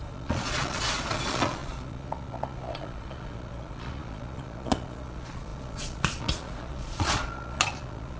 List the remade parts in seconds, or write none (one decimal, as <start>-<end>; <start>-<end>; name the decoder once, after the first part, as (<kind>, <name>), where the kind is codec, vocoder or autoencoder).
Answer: 0.0-8.2 (vocoder, Vocos)

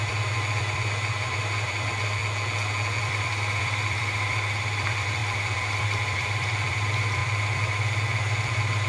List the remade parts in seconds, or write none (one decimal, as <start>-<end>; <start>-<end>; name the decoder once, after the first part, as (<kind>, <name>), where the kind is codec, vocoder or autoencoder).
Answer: 0.0-2.2 (vocoder, BigVGAN v2); 3.0-8.9

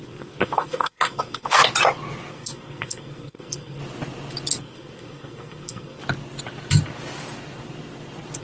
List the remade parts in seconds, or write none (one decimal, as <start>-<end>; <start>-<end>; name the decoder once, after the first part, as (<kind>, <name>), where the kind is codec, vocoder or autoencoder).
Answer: 0.0-1.6 (codec, SNAC); 2.3-3.8; 4.6-6.0

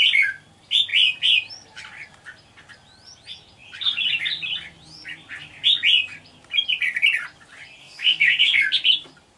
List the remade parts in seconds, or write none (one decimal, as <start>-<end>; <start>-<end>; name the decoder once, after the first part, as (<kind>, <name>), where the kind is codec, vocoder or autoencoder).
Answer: 7.8-8.6 (codec, SNAC)

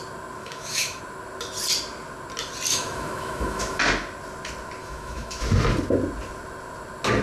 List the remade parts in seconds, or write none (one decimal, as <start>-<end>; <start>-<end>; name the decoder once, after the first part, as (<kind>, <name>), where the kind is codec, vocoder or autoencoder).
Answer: 0.4-1.0 (autoencoder, DAC-VAE); 2.7-3.8; 4.8-5.4

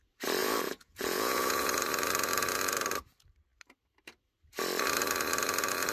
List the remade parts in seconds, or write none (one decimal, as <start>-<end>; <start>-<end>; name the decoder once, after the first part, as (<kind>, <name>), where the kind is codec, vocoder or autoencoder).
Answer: 0.4-1.7 (vocoder, Vocos)

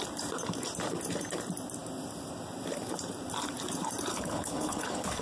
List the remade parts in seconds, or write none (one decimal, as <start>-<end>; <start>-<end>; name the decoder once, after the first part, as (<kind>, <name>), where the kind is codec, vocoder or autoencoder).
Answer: 4.1-5.2 (codec, HILCodec)

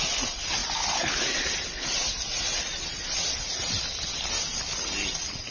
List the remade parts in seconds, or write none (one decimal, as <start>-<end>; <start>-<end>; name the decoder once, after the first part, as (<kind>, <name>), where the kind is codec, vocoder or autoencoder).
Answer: none